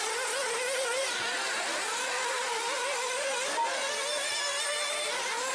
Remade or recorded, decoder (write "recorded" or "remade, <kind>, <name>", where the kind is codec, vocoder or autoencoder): recorded